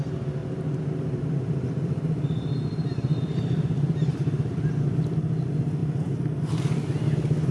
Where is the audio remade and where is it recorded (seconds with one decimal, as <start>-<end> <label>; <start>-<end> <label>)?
0.0-0.4 recorded; 0.4-4.7 remade; 4.7-5.8 recorded; 5.8-6.5 remade; 6.5-7.5 recorded